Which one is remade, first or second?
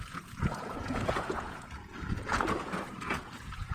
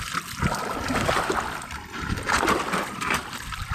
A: first